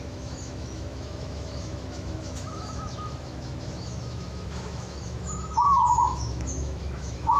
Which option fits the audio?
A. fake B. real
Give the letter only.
A